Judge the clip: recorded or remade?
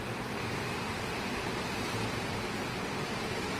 remade